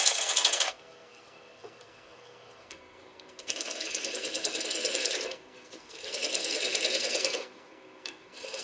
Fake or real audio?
fake